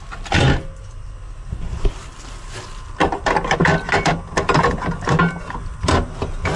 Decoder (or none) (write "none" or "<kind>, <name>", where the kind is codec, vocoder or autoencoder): none